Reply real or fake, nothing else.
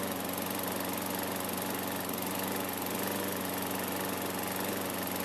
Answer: real